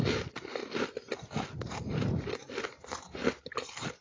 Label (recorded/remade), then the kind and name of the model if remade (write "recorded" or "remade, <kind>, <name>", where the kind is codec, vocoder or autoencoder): recorded